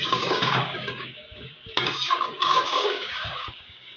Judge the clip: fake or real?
fake